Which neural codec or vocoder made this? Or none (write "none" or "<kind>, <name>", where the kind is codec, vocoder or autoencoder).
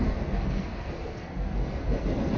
codec, SNAC